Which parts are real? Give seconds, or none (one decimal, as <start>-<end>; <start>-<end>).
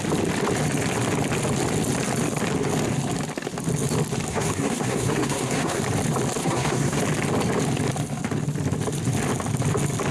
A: 0.0-4.3; 5.8-6.4; 7.0-10.1